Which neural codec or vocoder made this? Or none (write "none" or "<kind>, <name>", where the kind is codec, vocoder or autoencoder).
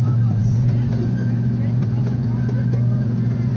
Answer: vocoder, Vocos